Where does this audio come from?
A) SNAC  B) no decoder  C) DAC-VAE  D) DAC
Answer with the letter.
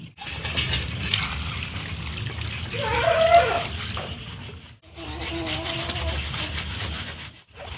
B